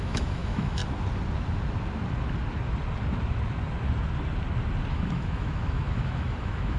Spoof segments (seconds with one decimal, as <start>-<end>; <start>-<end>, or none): 0.0-0.8; 4.9-6.8